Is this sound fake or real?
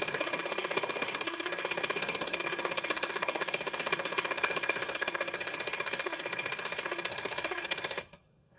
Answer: fake